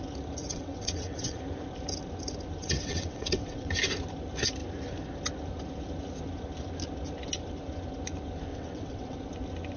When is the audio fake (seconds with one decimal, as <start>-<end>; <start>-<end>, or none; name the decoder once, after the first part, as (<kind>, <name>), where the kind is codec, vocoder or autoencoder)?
0.4-1.4 (vocoder, WaveNeXt); 2.6-3.7; 8.5-9.2